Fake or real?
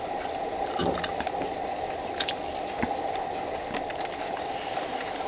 real